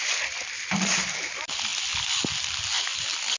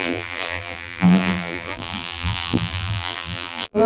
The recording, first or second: first